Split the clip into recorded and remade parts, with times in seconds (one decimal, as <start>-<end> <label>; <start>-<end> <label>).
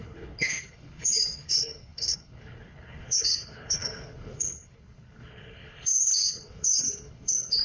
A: 0.0-7.6 remade